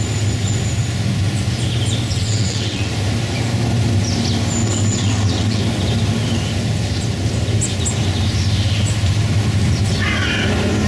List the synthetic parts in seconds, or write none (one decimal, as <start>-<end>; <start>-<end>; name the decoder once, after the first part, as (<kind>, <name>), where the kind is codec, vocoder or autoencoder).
2.1-2.9 (vocoder, WaveNeXt); 4.6-5.6